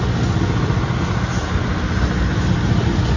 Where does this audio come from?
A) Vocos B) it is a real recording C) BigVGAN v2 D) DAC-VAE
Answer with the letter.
B